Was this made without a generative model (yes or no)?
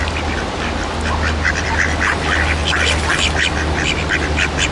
yes